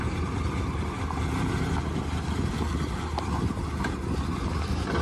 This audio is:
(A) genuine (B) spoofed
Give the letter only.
A